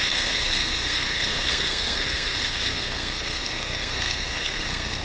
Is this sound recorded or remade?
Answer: remade